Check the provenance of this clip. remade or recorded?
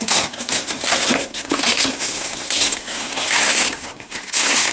remade